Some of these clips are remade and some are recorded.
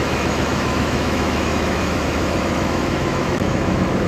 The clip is remade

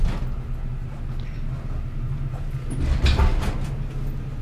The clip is recorded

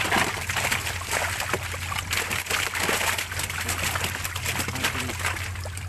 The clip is recorded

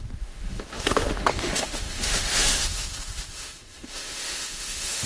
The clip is remade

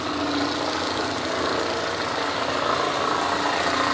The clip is recorded